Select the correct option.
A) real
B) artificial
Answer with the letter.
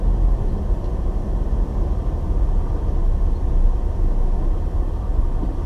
A